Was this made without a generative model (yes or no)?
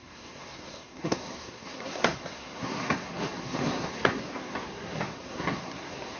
no